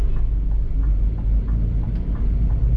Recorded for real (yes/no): yes